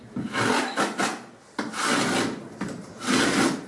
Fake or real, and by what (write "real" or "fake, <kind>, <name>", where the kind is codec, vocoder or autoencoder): real